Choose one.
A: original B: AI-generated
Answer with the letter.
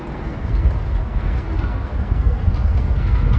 B